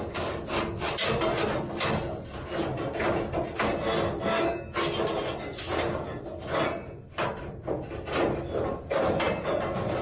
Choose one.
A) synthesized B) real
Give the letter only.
B